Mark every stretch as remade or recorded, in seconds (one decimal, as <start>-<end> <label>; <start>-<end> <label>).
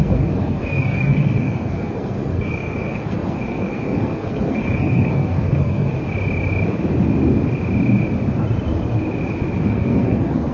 0.0-6.0 remade; 6.0-9.6 recorded; 9.6-10.5 remade